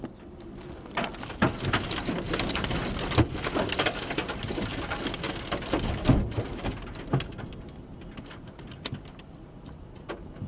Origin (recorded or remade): recorded